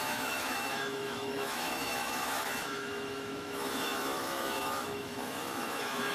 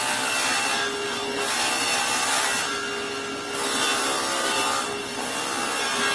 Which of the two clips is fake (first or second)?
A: first